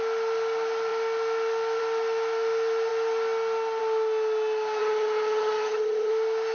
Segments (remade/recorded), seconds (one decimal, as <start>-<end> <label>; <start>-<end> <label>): 0.0-4.8 recorded; 4.8-6.1 remade; 6.1-6.5 recorded